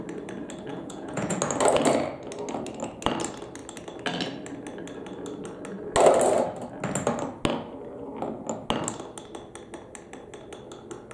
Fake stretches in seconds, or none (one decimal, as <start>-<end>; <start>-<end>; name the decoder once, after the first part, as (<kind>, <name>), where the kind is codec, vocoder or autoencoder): 0.7-1.4 (vocoder, Vocos)